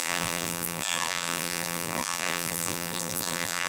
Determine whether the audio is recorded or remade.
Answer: remade